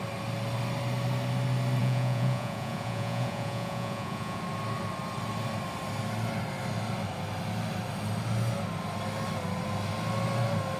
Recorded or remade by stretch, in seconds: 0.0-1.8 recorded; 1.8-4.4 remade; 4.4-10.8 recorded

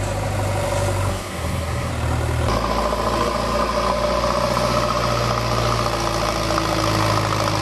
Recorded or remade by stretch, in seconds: 0.0-1.1 recorded; 1.1-1.9 remade; 1.9-7.6 recorded

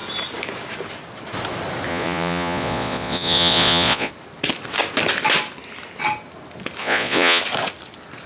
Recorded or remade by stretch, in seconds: 0.0-1.9 recorded; 1.9-4.1 remade; 4.1-6.8 recorded; 6.8-7.4 remade; 7.4-8.3 recorded

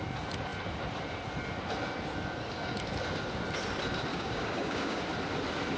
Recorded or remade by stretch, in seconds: 0.0-4.1 recorded; 4.1-5.0 remade; 5.0-5.8 recorded

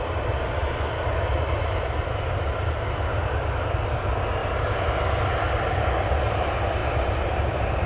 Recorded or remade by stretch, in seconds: 0.0-1.6 recorded; 1.6-3.1 remade; 3.1-4.4 recorded; 4.4-5.0 remade; 5.0-7.9 recorded